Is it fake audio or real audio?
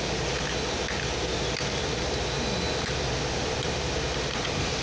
real